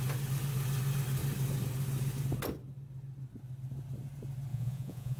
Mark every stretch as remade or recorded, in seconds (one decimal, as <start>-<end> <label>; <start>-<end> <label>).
0.0-4.5 recorded; 4.5-5.2 remade